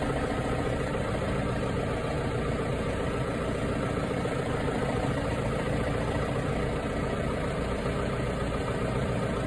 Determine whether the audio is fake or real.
fake